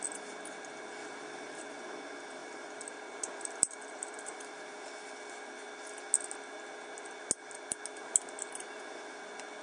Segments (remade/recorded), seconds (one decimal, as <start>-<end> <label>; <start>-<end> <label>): 0.0-1.0 recorded; 1.0-1.6 remade; 1.6-2.4 recorded; 2.4-4.9 remade; 4.9-9.6 recorded